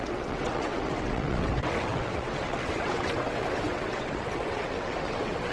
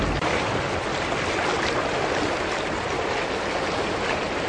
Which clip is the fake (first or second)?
first